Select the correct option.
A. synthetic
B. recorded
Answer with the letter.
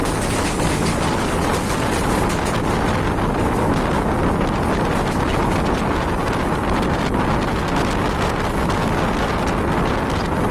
B